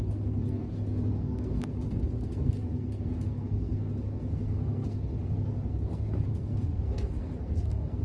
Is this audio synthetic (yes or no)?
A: yes